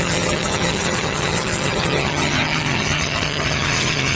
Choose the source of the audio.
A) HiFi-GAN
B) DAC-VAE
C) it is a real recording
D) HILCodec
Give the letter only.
A